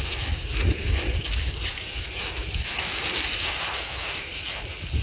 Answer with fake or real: real